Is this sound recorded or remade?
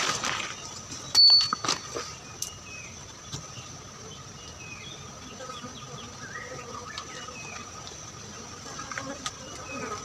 recorded